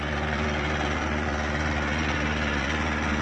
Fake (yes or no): yes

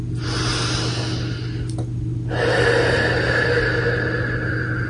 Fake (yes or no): no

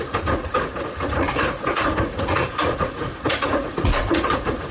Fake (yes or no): yes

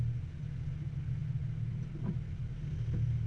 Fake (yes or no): no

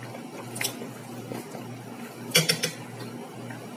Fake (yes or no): no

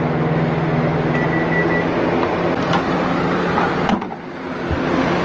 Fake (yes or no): no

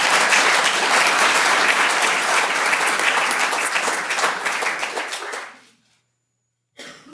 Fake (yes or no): no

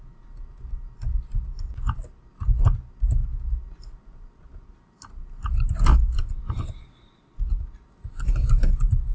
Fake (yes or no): no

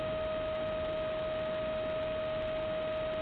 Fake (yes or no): no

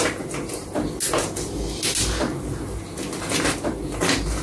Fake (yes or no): no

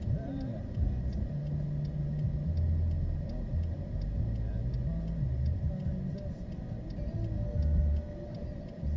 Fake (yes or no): no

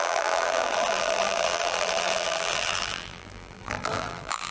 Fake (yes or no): yes